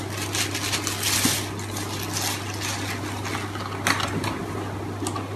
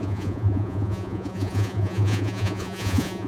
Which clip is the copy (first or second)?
second